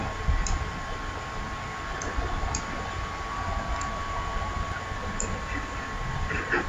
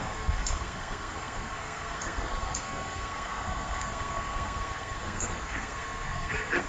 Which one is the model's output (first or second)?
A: second